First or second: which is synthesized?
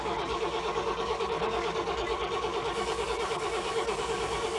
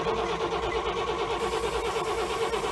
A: first